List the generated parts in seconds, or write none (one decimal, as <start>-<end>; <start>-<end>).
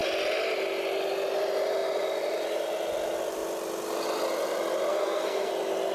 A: 4.9-5.5